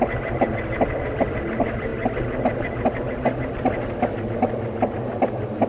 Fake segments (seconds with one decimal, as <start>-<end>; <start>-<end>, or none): none